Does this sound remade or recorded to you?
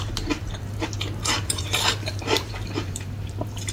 remade